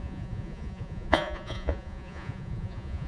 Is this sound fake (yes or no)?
yes